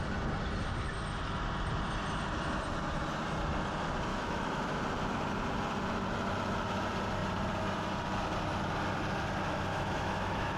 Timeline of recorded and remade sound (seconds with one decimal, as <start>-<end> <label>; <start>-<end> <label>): 0.0-4.1 recorded; 4.1-4.8 remade; 4.8-9.7 recorded; 9.7-10.6 remade